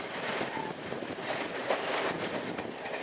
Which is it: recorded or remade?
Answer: recorded